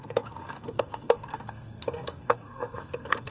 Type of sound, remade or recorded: remade